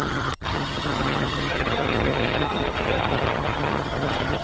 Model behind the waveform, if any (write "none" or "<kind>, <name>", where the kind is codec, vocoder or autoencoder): vocoder, HiFi-GAN